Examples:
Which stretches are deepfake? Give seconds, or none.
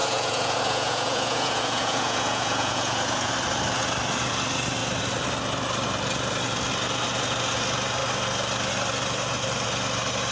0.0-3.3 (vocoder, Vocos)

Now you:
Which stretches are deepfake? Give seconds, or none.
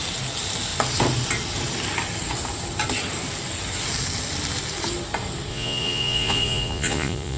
5.5-7.4 (vocoder, Vocos)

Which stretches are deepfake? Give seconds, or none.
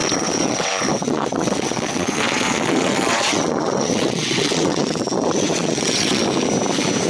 0.0-6.2 (vocoder, WaveNeXt)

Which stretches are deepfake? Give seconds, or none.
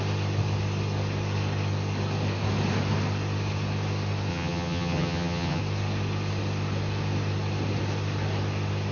4.3-5.6 (vocoder, HiFi-GAN)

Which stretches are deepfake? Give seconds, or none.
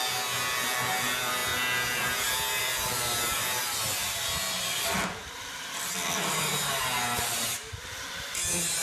0.9-1.4 (vocoder, BigVGAN v2); 2.6-8.8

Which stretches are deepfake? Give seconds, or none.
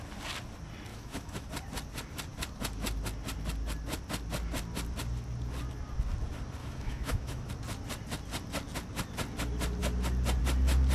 0.9-1.5 (autoencoder, DAC-VAE); 6.6-7.5